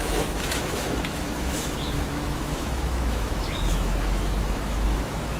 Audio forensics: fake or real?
fake